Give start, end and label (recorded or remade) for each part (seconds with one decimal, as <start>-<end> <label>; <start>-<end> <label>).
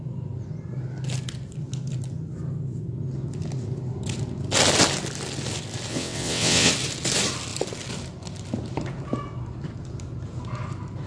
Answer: 0.0-5.9 recorded; 5.9-6.7 remade; 6.7-11.1 recorded